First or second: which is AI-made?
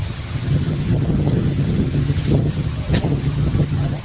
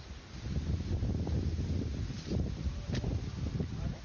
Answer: first